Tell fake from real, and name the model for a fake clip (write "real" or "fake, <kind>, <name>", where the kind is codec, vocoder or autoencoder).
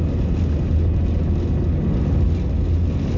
real